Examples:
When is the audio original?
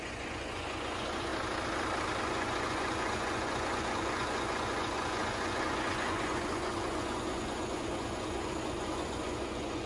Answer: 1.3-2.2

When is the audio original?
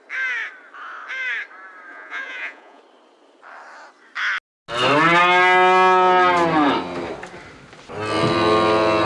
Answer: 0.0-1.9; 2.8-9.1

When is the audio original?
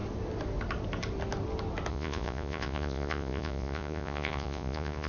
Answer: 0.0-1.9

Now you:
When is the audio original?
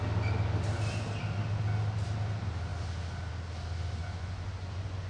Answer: 0.0-4.0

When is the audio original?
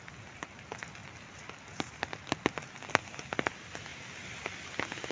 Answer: 0.0-5.1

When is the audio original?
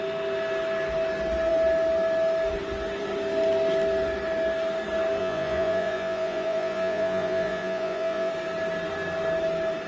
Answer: 0.0-5.2; 8.3-9.9